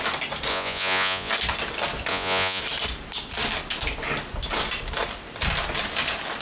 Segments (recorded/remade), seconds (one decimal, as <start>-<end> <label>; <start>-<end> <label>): 0.0-0.5 recorded; 0.5-1.3 remade; 1.3-2.1 recorded; 2.1-2.6 remade; 2.6-6.4 recorded